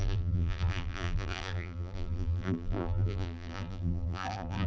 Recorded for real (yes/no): no